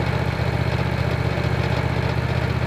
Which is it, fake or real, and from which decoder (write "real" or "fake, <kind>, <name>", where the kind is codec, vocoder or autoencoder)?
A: real